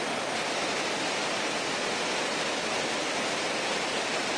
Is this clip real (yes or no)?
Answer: yes